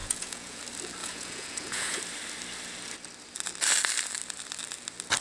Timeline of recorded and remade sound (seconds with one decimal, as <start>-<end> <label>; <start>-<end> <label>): 0.0-0.6 remade; 0.6-1.0 recorded; 1.0-2.0 remade; 2.0-5.2 recorded